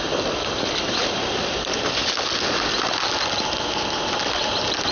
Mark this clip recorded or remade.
recorded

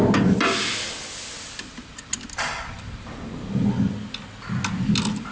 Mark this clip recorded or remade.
recorded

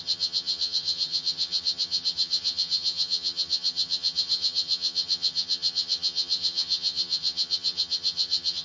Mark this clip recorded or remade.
remade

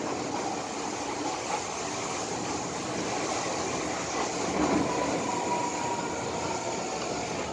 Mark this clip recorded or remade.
recorded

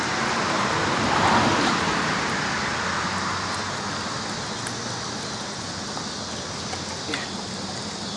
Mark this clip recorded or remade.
recorded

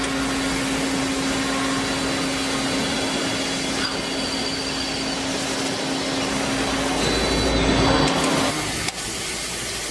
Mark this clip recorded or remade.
recorded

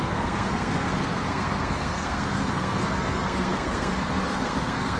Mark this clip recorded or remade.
remade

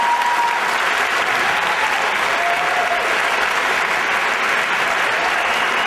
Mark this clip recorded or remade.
recorded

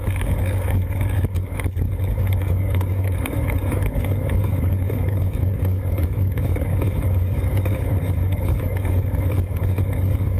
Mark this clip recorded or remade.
remade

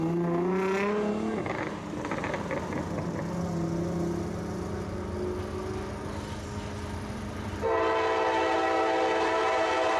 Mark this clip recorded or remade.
recorded